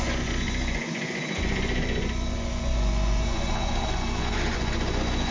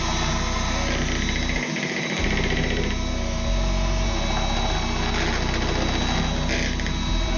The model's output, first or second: first